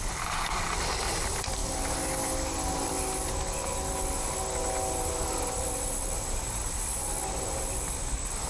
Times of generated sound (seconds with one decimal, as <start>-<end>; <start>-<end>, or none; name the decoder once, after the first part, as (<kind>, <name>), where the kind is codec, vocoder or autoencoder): none